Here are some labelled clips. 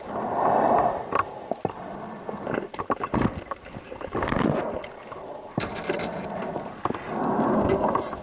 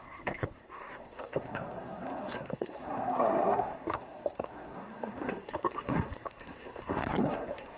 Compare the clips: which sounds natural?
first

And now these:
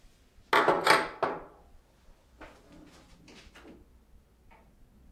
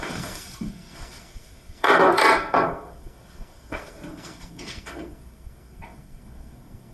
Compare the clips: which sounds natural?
first